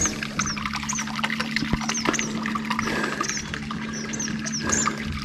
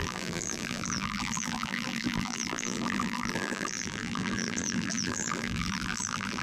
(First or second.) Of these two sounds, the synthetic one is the second